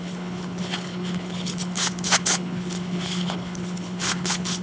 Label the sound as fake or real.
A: fake